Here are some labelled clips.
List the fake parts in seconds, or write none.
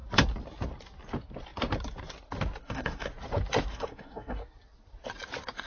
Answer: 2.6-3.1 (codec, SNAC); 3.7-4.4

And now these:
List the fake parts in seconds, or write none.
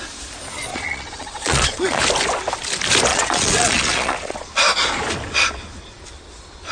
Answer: 0.7-2.0 (vocoder, Vocos); 3.1-4.5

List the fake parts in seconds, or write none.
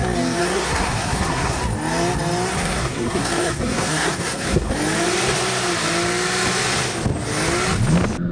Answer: 0.4-1.6 (codec, SNAC); 2.5-4.7